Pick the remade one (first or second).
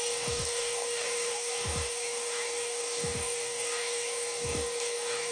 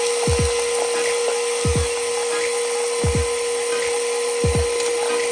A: first